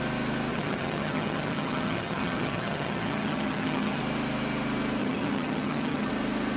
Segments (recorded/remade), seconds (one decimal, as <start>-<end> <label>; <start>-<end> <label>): 0.0-0.5 recorded; 0.5-4.0 remade; 4.0-5.0 recorded; 5.0-6.1 remade; 6.1-6.6 recorded